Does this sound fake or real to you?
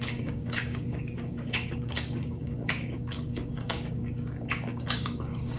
fake